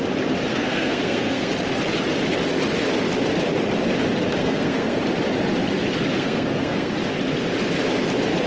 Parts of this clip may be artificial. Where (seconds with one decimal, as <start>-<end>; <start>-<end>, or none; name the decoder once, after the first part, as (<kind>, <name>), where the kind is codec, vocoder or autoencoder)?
0.5-1.5 (codec, SNAC); 4.4-5.0; 6.1-6.9